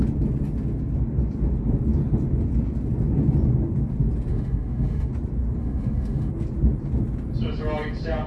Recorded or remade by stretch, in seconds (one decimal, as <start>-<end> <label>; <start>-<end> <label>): 0.0-4.3 recorded; 4.3-5.1 remade; 5.1-5.6 recorded; 5.6-6.3 remade; 6.3-8.3 recorded